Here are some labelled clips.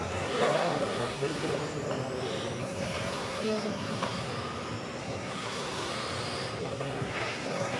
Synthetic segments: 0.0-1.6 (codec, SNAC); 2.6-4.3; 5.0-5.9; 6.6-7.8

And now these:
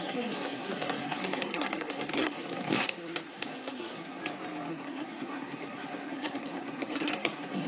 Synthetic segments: 0.0-4.2 (codec, SNAC); 4.7-7.7

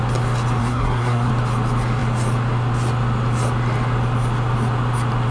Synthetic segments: 0.6-1.3 (codec, SNAC)

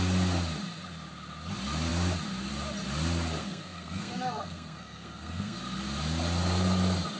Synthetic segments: 3.4-5.6 (codec, SNAC)

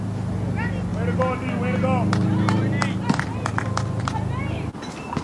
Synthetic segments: none

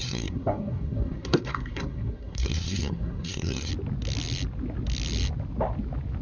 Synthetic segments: 0.0-3.7 (codec, SNAC)

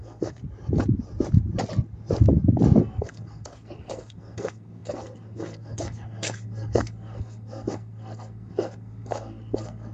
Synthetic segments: 0.0-0.4 (codec, SNAC); 2.8-9.9